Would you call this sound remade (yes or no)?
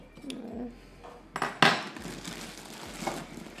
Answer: no